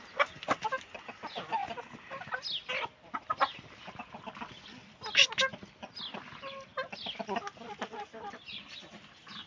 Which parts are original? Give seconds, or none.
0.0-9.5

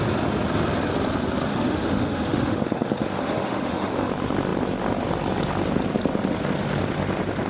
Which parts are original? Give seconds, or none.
0.0-1.5; 4.1-7.5

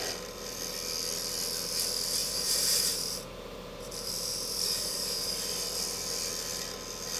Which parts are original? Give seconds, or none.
0.0-2.2; 5.3-7.2

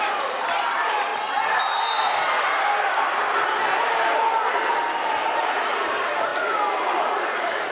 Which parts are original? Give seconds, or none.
1.1-5.2; 6.3-7.3

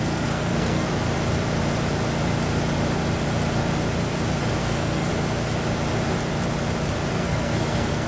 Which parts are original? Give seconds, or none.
0.9-4.6; 5.1-7.1

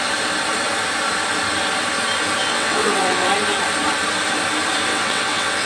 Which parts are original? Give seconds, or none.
0.0-2.4; 3.3-4.9

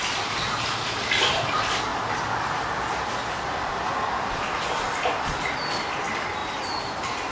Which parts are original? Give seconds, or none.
0.0-6.4

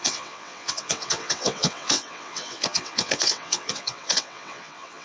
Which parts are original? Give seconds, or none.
none